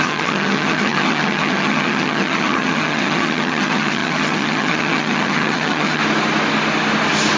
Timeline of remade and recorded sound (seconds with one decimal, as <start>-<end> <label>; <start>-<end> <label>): 0.0-6.0 remade; 6.0-7.4 recorded